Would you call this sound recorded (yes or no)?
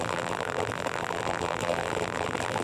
no